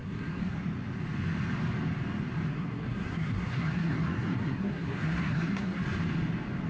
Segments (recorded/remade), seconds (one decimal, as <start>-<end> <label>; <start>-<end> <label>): 0.0-0.6 remade; 0.6-2.5 recorded; 2.5-5.8 remade; 5.8-6.7 recorded